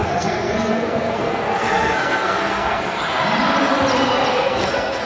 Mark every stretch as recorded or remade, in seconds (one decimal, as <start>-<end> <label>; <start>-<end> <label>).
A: 0.0-3.0 remade; 3.0-4.3 recorded; 4.3-5.0 remade